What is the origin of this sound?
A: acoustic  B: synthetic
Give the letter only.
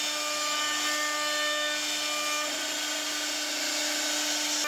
A